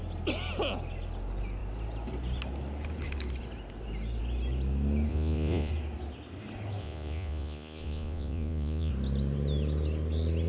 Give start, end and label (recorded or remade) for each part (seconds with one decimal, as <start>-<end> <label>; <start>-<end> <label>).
0.0-5.1 recorded; 5.1-5.7 remade; 5.7-6.8 recorded; 6.8-8.9 remade; 8.9-10.5 recorded

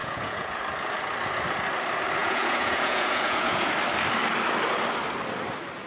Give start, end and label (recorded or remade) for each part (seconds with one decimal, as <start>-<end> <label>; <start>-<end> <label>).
0.0-0.6 remade; 0.6-2.2 recorded; 2.2-3.7 remade; 3.7-5.9 recorded

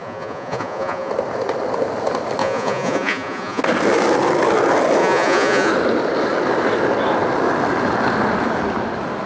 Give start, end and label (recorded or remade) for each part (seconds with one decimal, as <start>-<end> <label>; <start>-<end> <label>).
0.0-1.1 remade; 1.1-2.4 recorded; 2.4-3.6 remade; 3.6-5.0 recorded; 5.0-5.7 remade; 5.7-9.3 recorded

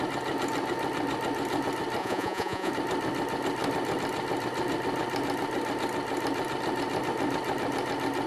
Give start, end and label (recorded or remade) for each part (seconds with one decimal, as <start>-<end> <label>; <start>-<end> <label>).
0.0-2.0 recorded; 2.0-2.7 remade; 2.7-8.3 recorded

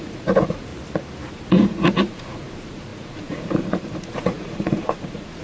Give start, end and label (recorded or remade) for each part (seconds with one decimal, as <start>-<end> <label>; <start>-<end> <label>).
0.0-0.7 remade; 0.7-1.3 recorded; 1.3-5.4 remade

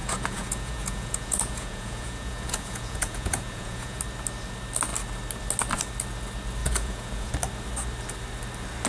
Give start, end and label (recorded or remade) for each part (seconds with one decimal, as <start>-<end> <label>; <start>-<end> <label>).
0.0-4.0 remade; 4.0-6.6 recorded; 6.6-7.3 remade; 7.3-8.9 recorded